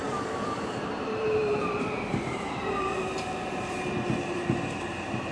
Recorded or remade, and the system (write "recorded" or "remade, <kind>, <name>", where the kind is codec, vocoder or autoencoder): remade, vocoder, BigVGAN v2